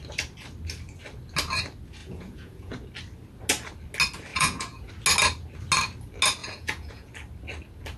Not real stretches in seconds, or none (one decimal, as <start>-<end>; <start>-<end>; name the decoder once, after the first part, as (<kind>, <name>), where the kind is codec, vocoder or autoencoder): 2.0-2.7 (vocoder, Vocos); 4.3-4.9; 6.4-7.1